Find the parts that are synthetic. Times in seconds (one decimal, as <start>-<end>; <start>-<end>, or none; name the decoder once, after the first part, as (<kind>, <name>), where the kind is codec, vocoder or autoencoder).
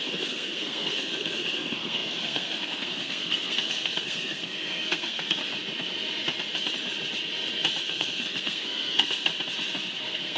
0.0-5.4 (codec, SNAC); 7.9-9.3; 10.0-10.4